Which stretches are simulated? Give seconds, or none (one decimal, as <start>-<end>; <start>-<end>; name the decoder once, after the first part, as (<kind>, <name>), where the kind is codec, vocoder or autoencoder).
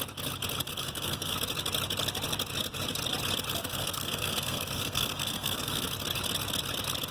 0.7-1.4 (codec, SNAC); 3.6-5.9